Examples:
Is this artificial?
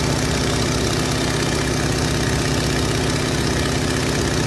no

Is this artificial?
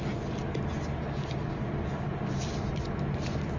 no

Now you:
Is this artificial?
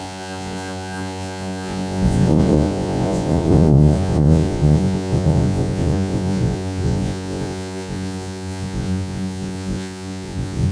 yes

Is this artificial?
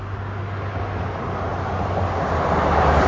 no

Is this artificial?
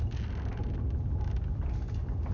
no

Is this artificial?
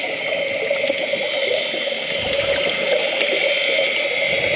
no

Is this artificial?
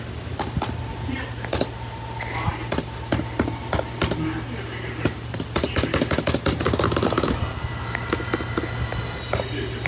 no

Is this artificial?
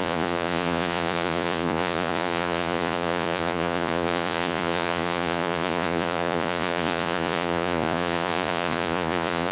yes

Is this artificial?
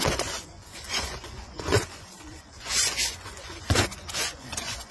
yes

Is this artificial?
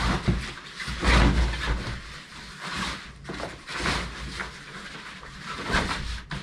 no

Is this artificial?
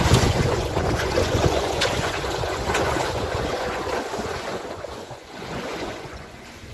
yes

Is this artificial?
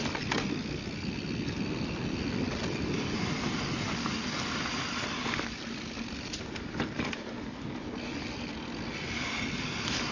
no